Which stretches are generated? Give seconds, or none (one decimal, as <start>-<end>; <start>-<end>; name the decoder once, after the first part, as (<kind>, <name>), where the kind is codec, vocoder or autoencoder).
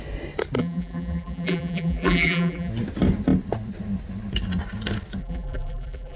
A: 0.6-2.7 (vocoder, BigVGAN v2); 5.2-6.2